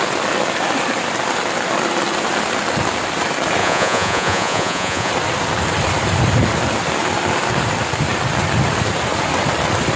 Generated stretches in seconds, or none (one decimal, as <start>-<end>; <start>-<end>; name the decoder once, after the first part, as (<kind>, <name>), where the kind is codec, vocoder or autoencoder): 3.6-5.1 (vocoder, Vocos)